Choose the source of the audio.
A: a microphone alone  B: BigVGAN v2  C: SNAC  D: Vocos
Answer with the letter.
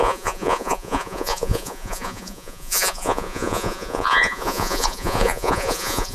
D